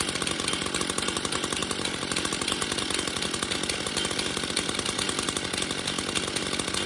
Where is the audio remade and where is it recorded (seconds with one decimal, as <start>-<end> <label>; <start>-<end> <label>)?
0.0-6.9 recorded